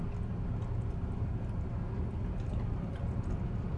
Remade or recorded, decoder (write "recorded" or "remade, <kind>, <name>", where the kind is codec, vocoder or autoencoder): recorded